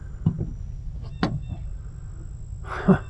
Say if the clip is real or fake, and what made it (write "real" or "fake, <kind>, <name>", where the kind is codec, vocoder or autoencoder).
real